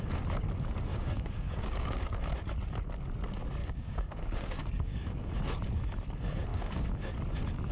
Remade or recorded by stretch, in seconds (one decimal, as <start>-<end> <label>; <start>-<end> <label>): 0.0-0.9 recorded; 0.9-2.2 remade; 2.2-3.6 recorded; 3.6-5.3 remade; 5.3-6.5 recorded; 6.5-7.1 remade; 7.1-7.7 recorded